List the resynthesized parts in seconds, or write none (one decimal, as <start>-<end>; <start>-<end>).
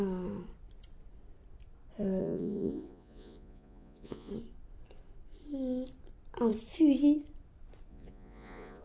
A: 2.2-4.3; 7.9-8.8